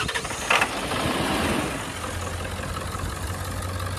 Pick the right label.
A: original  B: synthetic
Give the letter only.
A